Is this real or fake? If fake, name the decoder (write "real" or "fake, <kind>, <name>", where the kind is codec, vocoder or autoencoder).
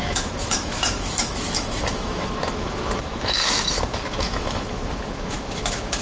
fake, autoencoder, DAC-VAE